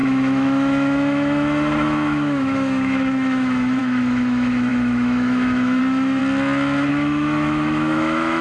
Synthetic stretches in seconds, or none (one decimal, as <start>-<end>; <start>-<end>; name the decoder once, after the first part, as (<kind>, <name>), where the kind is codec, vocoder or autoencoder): 0.0-6.2 (autoencoder, DAC-VAE); 6.9-8.4